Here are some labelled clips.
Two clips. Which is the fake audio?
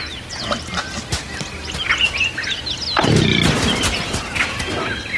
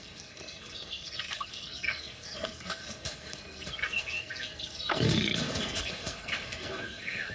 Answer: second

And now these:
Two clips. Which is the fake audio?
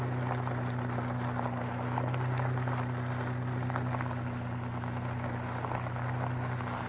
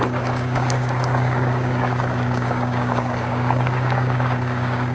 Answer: second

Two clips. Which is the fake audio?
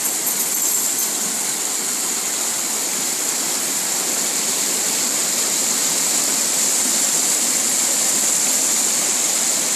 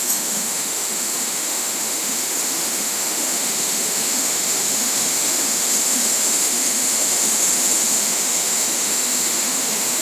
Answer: second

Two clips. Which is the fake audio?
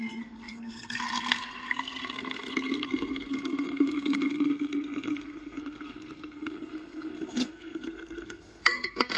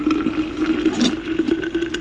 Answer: first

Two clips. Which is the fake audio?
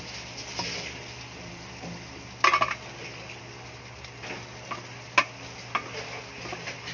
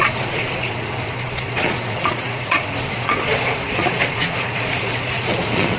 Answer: second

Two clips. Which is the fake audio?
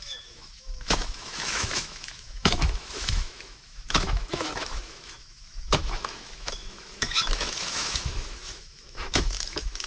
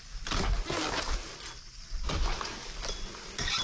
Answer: first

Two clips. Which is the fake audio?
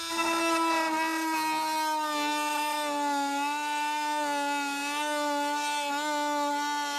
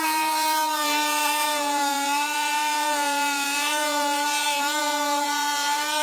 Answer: second